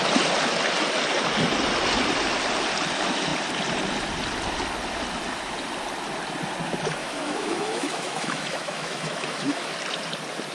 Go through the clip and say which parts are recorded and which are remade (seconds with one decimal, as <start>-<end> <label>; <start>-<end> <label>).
0.0-7.0 recorded; 7.0-9.7 remade; 9.7-10.5 recorded